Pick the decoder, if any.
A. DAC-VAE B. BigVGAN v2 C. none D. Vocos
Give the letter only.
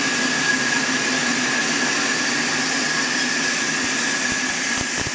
C